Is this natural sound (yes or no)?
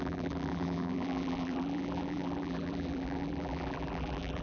no